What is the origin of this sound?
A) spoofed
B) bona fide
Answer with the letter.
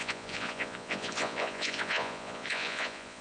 A